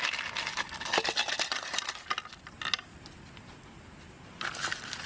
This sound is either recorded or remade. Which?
recorded